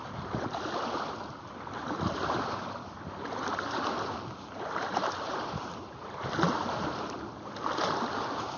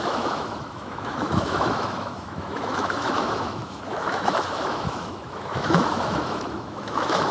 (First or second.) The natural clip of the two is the first